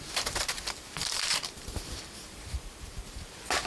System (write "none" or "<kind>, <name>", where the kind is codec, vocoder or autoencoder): vocoder, BigVGAN v2